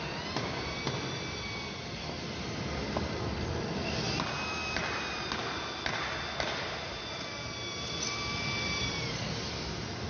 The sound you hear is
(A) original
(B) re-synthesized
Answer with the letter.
A